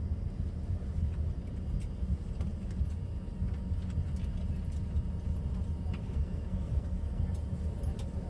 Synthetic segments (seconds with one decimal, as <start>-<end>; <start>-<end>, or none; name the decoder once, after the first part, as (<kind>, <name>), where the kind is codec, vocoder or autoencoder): 6.0-7.2 (codec, SNAC)